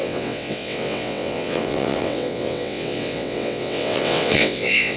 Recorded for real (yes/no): no